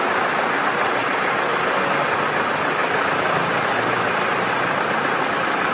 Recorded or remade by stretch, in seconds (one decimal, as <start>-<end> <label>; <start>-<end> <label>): 0.0-5.7 recorded

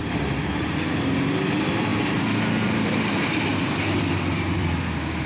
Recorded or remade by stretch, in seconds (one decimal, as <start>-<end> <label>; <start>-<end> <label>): 0.0-5.3 remade

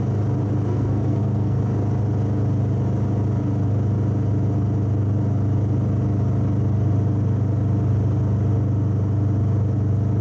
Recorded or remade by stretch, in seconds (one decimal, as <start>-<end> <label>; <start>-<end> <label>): 0.0-0.7 recorded; 0.7-1.6 remade; 1.6-10.2 recorded

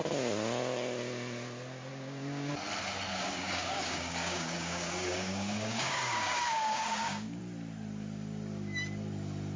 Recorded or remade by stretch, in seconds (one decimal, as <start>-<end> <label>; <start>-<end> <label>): 0.0-1.9 recorded; 1.9-2.5 remade; 2.5-3.1 recorded; 3.1-7.4 remade; 7.4-9.6 recorded

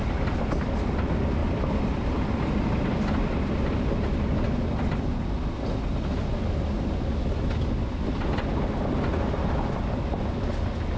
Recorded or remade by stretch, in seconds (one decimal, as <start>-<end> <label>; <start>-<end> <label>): 0.0-1.4 recorded; 1.4-4.6 remade; 4.6-11.0 recorded

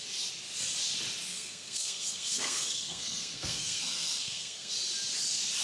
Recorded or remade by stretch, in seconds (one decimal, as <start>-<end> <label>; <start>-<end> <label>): 0.0-1.3 recorded; 1.3-4.7 remade; 4.7-5.6 recorded